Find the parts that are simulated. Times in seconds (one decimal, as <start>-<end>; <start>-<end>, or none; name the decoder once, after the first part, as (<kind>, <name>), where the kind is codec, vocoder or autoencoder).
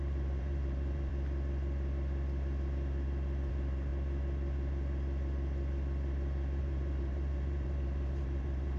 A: 0.0-1.1 (vocoder, BigVGAN v2); 3.5-3.9; 6.6-8.8